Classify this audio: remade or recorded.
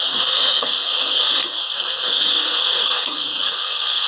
remade